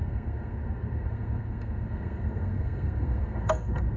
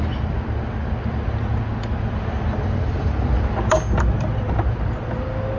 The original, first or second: second